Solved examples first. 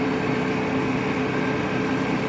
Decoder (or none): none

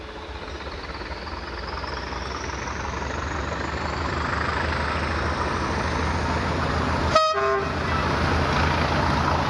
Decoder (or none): none